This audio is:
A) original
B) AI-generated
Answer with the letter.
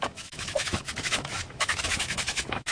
B